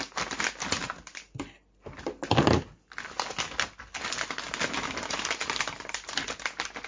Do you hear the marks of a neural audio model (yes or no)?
no